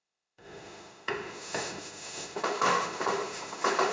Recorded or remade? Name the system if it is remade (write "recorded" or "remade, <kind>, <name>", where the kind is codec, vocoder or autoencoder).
remade, autoencoder, DAC-VAE